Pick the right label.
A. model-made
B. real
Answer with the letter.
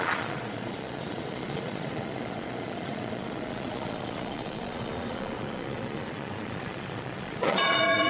A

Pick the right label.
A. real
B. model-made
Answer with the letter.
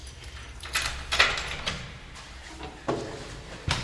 B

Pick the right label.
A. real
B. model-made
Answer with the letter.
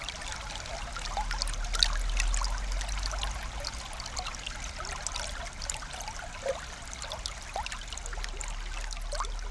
A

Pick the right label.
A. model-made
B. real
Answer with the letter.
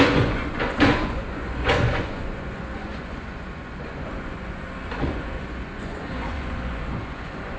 A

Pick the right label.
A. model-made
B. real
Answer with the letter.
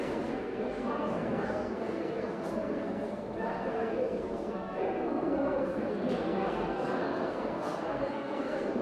A